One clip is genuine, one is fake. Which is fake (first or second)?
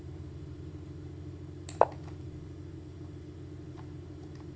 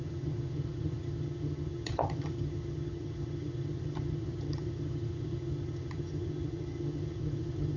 second